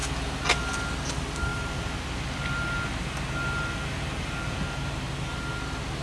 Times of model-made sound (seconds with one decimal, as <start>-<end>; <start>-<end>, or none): none